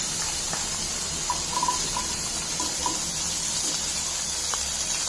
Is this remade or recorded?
recorded